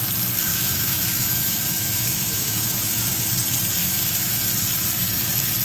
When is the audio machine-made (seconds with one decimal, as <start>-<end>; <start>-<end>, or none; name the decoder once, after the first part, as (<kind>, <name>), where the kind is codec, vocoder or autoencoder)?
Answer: 0.5-3.0 (autoencoder, DAC-VAE); 3.8-4.4